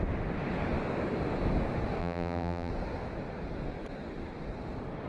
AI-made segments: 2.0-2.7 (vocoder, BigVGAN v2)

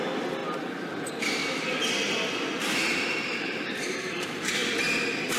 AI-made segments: 2.6-4.7 (vocoder, BigVGAN v2)

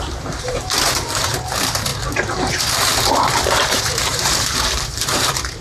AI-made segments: 0.0-1.9 (vocoder, BigVGAN v2); 2.5-5.6